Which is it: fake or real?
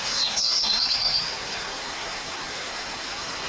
fake